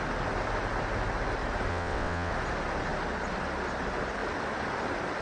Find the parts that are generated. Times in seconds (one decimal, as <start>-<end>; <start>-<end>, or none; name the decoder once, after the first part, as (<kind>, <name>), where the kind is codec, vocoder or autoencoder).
1.7-2.3 (vocoder, WaveNeXt)